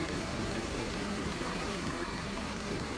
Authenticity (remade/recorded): remade